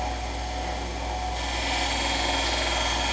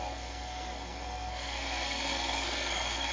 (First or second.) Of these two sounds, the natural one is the first